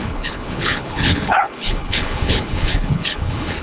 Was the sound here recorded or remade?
remade